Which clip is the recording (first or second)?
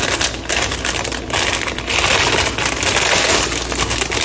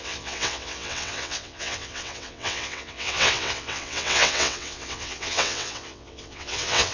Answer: first